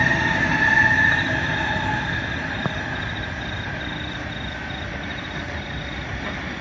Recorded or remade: recorded